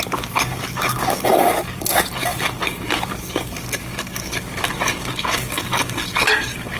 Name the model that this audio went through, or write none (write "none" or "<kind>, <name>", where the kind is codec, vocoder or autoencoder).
codec, DAC